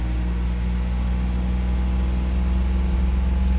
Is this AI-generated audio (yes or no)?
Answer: no